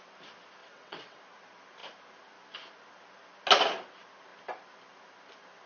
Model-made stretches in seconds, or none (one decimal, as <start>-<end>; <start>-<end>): 0.6-1.2